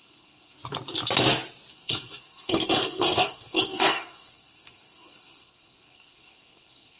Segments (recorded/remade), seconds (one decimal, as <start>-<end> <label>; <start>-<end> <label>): 0.0-0.6 remade; 0.6-1.7 recorded; 1.7-7.0 remade